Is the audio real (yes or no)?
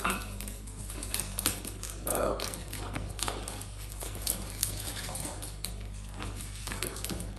no